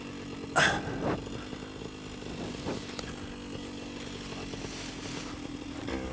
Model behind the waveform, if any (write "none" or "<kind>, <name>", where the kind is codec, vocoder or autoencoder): none